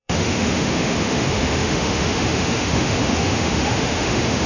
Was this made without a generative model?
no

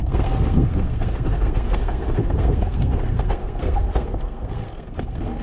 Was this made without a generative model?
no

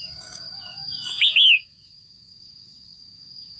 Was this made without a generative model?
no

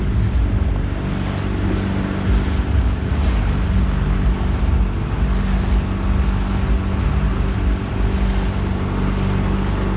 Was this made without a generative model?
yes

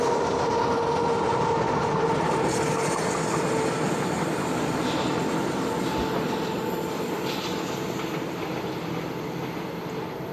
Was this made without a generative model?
yes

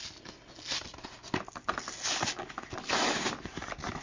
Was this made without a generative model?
yes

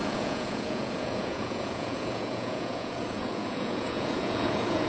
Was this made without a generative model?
no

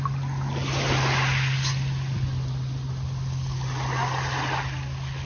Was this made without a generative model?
yes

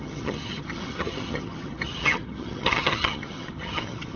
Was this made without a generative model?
no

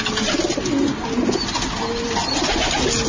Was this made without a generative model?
yes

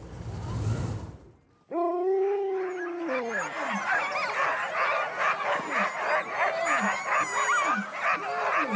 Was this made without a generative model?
yes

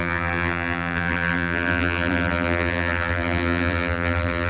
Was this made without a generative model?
no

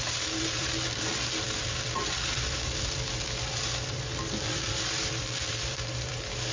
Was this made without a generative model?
no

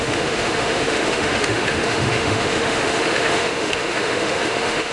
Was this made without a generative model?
no